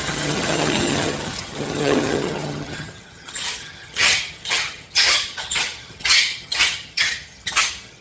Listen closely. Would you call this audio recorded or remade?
remade